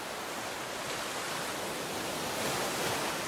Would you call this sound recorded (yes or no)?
yes